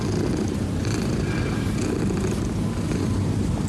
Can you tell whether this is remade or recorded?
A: recorded